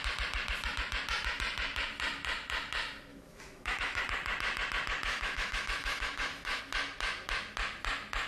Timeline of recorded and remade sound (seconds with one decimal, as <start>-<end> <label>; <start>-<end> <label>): 0.0-3.1 recorded; 3.1-4.0 remade; 4.0-5.1 recorded; 5.1-6.6 remade; 6.6-8.3 recorded